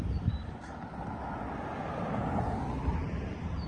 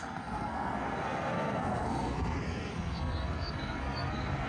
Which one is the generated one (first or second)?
second